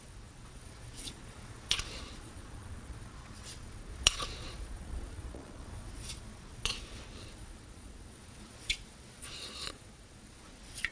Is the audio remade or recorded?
remade